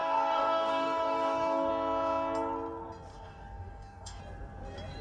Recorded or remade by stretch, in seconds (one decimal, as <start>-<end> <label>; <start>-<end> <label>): 0.0-1.7 remade; 1.7-3.1 recorded; 3.1-4.2 remade; 4.2-5.0 recorded